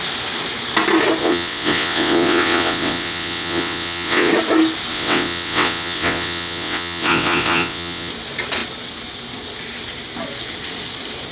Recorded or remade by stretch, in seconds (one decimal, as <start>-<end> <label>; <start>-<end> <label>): 0.0-1.2 recorded; 1.2-4.3 remade; 4.3-4.9 recorded; 4.9-8.1 remade; 8.1-11.3 recorded